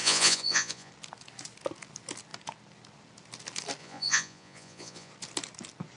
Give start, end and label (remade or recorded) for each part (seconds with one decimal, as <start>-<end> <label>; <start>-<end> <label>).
0.0-0.9 remade; 0.9-3.8 recorded; 3.8-5.1 remade; 5.1-6.0 recorded